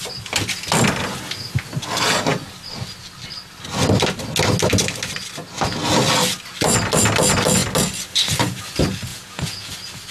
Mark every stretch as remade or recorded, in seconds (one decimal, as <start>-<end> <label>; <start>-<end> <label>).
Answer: 0.0-9.1 recorded; 9.1-9.7 remade; 9.7-10.1 recorded